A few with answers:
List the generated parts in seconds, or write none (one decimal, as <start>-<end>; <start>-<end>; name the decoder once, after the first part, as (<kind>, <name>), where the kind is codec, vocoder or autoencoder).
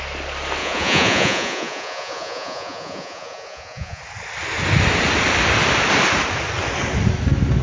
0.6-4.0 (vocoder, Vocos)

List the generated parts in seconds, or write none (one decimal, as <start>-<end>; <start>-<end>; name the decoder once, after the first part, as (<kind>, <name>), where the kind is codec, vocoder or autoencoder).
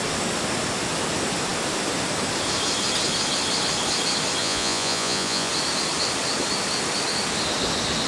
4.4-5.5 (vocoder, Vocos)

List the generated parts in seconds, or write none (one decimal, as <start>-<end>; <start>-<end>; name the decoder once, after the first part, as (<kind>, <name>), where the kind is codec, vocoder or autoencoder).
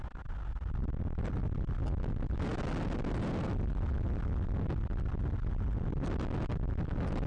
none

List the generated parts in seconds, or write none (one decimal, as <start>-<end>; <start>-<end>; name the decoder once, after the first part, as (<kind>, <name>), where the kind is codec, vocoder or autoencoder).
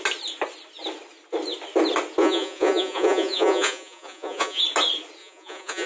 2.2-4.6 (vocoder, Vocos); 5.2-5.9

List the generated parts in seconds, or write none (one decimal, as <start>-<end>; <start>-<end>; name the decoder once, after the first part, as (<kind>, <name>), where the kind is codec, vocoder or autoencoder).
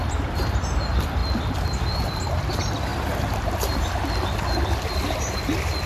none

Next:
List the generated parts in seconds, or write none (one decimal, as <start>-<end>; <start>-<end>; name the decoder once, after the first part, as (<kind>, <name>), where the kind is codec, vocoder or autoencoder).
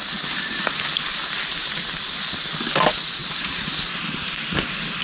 none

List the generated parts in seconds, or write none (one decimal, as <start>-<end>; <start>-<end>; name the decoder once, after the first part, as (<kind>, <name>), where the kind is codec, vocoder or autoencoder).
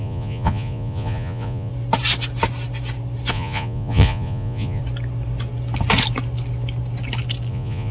0.0-1.7 (vocoder, Vocos); 3.3-4.8; 7.5-7.9